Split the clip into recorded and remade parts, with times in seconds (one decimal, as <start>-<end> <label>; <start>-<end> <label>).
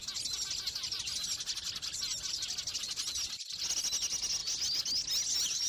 0.0-5.7 recorded